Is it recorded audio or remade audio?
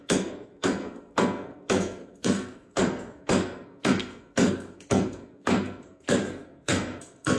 remade